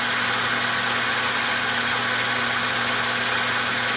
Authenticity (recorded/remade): recorded